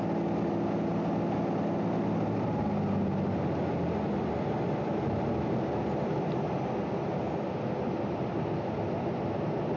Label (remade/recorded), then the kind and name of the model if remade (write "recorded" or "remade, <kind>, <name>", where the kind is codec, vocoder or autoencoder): recorded